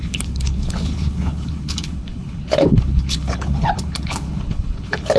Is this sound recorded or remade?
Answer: remade